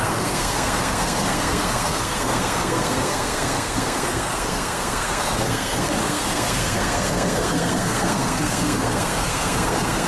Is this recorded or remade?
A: remade